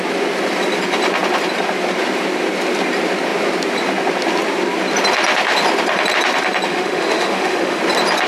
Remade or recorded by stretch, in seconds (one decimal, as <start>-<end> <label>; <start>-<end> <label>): 0.0-6.7 recorded; 6.7-7.8 remade; 7.8-8.3 recorded